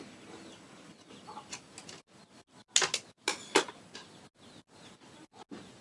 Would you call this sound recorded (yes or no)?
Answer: yes